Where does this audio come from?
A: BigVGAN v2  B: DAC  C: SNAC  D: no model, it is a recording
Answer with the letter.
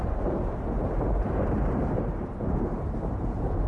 A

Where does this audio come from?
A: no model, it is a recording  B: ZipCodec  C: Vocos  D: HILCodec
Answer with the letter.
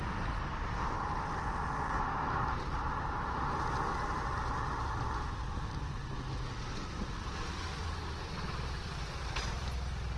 A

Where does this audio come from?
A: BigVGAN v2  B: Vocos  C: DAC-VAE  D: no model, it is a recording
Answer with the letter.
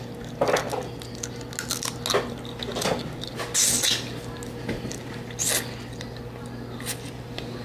D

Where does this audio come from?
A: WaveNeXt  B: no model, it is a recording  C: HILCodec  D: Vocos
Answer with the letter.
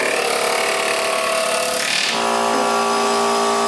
B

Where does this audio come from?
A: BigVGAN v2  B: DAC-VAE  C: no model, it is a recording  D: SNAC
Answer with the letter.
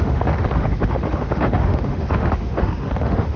B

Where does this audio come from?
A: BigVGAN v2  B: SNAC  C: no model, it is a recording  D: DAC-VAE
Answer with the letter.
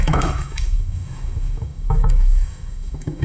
D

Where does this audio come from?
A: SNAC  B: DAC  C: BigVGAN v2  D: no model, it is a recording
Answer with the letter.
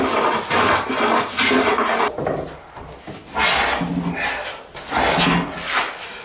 D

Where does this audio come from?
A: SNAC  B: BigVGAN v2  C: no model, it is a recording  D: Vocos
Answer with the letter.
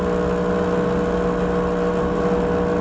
C